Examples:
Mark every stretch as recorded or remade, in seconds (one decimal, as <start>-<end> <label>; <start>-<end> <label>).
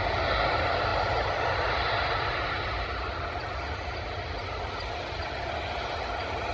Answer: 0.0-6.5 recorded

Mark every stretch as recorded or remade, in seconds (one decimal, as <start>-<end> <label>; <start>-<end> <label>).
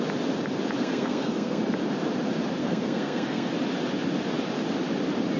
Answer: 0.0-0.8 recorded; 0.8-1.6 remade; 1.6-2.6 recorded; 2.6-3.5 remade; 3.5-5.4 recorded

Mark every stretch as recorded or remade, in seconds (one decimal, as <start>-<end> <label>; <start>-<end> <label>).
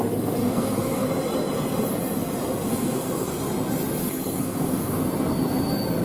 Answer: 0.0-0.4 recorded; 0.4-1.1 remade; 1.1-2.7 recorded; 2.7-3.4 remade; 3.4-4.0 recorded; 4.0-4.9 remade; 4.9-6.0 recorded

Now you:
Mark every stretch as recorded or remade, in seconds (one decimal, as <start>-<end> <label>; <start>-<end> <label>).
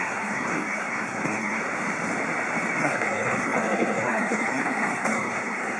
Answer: 0.0-1.6 remade; 1.6-2.8 recorded; 2.8-5.8 remade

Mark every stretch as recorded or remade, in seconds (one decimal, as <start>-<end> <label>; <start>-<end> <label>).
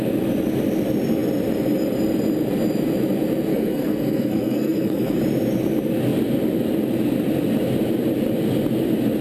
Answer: 0.0-3.5 recorded; 3.5-5.2 remade; 5.2-9.2 recorded